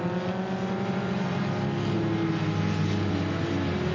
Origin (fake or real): real